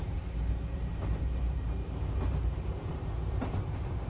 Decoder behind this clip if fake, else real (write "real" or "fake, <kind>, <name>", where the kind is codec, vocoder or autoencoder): fake, vocoder, BigVGAN v2